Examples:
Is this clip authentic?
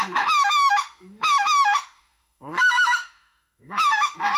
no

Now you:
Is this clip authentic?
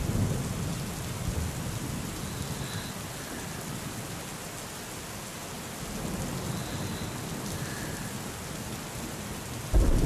yes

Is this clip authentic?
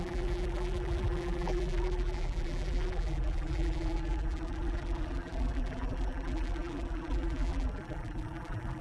no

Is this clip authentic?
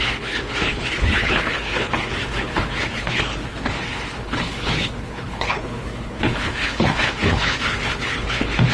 no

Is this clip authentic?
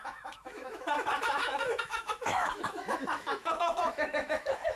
no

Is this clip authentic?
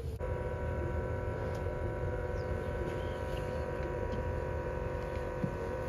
no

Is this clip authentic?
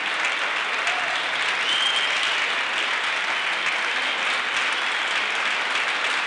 yes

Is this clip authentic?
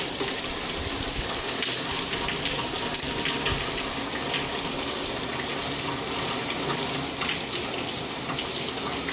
yes